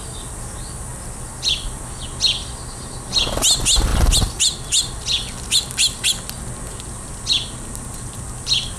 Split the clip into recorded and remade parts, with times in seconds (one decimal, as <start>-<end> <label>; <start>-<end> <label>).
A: 0.0-8.8 recorded